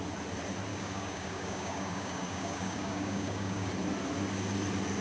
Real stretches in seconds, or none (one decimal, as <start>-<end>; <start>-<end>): 0.0-0.7; 3.7-5.0